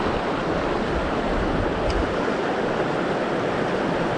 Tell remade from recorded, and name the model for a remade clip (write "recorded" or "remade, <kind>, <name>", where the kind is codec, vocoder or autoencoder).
remade, vocoder, BigVGAN v2